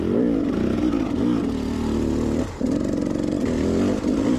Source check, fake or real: fake